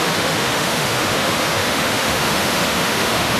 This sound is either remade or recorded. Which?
remade